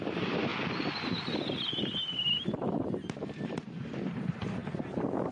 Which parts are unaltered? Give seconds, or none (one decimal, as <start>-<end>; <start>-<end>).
0.5-2.1; 4.6-5.3